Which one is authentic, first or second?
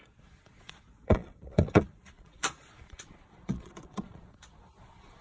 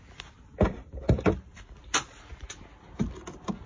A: second